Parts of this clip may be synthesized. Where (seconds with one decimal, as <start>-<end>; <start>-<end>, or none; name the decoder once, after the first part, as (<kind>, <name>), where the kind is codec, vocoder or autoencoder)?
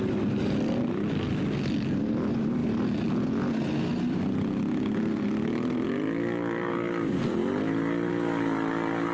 none